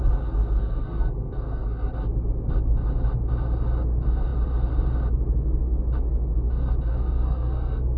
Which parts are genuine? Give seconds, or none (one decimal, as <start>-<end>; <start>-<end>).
0.0-0.6; 1.9-6.9